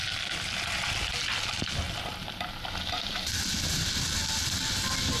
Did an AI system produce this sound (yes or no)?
no